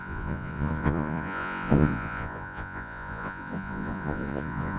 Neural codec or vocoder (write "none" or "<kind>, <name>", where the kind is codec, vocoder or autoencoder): vocoder, Vocos